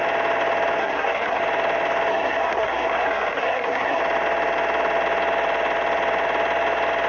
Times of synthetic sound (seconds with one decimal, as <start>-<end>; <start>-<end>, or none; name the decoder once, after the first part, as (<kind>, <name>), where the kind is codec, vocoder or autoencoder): 0.8-1.4 (codec, SNAC); 2.1-4.0